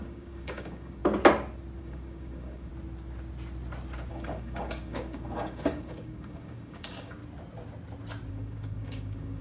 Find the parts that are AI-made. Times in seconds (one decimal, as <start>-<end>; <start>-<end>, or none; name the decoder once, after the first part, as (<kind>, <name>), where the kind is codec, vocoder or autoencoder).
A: 0.0-1.0 (codec, DAC); 1.8-2.7; 4.1-7.2; 8.3-9.4